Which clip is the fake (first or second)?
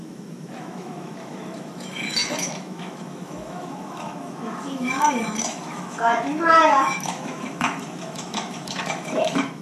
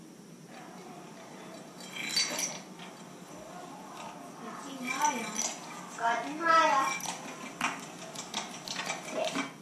first